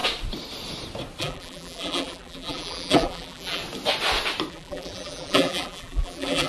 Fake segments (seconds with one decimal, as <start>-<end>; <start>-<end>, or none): 1.2-3.6; 4.5-6.5